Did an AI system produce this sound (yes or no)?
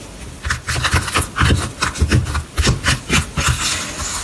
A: no